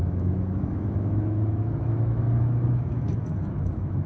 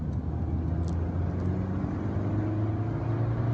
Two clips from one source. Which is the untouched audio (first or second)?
second